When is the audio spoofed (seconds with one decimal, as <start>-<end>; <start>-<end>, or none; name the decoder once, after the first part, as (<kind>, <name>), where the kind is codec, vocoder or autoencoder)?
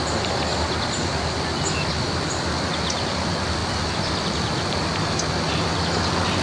none